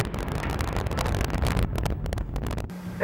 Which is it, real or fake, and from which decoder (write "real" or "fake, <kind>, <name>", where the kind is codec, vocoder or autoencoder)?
real